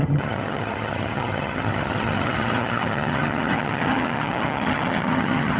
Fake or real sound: fake